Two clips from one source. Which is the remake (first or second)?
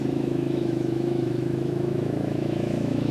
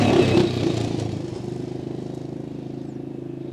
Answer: first